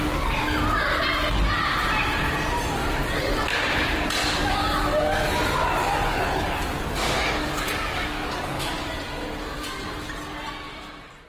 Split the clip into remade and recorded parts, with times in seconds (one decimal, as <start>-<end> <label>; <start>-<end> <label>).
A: 0.0-4.2 recorded; 4.2-5.3 remade; 5.3-5.8 recorded; 5.8-8.9 remade; 8.9-11.3 recorded